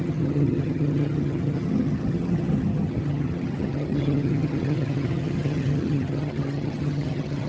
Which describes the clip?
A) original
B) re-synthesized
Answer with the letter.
B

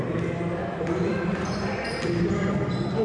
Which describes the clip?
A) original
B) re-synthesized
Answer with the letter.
B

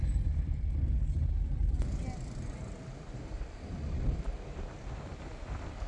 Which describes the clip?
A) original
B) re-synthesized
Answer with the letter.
A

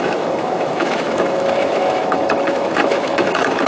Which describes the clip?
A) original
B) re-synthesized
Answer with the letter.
B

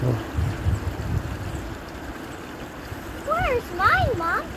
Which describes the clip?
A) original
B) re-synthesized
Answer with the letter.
A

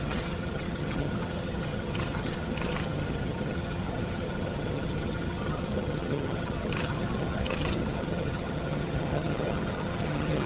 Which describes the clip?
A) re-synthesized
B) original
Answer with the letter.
A